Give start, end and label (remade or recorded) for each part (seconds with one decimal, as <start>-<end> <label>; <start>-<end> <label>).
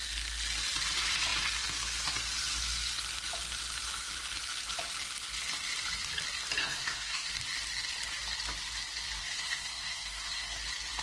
0.0-6.6 recorded; 6.6-7.3 remade; 7.3-9.2 recorded; 9.2-10.6 remade; 10.6-11.0 recorded